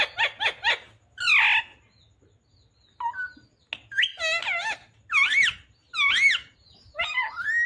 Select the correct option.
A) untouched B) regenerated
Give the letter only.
A